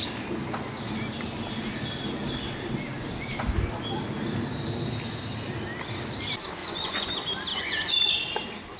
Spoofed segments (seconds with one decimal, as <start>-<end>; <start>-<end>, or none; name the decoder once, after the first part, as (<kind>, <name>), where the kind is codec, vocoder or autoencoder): 6.6-7.1 (vocoder, Vocos); 7.5-8.1